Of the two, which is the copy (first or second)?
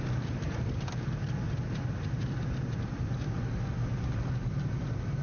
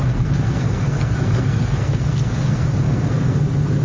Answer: second